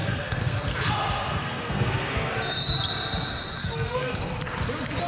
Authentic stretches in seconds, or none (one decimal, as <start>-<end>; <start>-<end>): 0.9-1.4; 2.3-3.6; 4.3-5.1